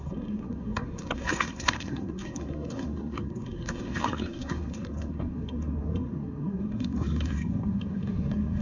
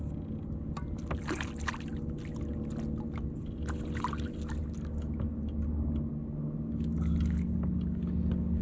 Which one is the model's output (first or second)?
first